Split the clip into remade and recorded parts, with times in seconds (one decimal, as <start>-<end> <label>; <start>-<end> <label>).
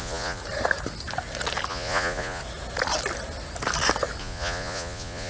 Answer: 0.0-0.4 remade; 0.4-1.7 recorded; 1.7-2.4 remade; 2.4-4.2 recorded; 4.2-5.3 remade